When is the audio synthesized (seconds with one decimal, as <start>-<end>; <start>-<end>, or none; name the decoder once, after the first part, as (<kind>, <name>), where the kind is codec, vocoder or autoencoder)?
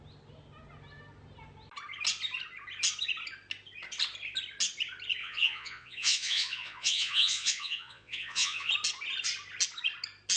5.2-8.7 (vocoder, Vocos)